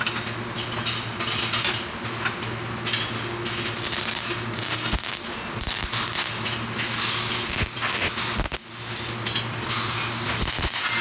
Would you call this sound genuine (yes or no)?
yes